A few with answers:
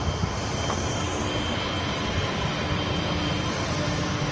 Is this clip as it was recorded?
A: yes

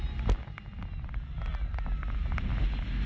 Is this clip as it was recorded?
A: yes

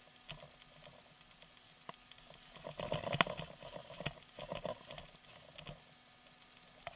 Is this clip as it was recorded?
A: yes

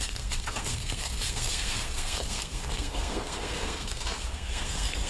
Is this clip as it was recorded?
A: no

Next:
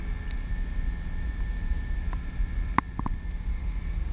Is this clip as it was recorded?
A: yes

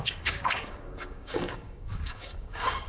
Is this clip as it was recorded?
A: no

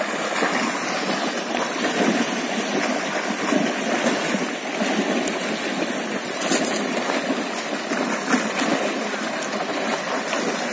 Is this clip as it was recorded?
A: yes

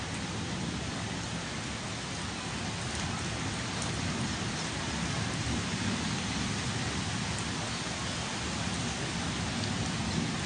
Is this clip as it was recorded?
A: yes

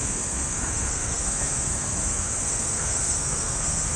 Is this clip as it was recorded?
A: no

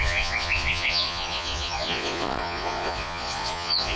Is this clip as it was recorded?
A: no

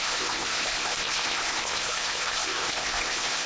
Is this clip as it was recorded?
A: no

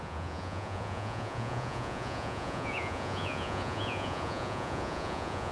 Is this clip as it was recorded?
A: no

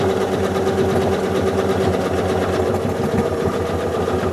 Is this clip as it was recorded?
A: yes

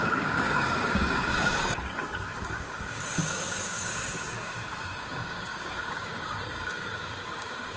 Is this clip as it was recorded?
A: no